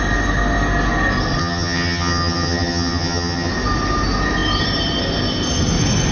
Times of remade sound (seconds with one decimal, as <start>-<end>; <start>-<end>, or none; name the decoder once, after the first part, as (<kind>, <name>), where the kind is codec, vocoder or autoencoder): 1.4-3.5 (vocoder, HiFi-GAN)